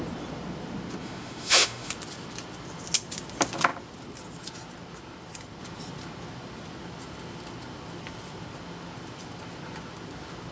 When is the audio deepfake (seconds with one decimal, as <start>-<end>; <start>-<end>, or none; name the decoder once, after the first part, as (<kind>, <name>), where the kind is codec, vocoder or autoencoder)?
1.0-1.9 (autoencoder, DAC-VAE)